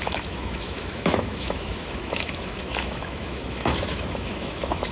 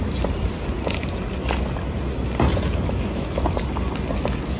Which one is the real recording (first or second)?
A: second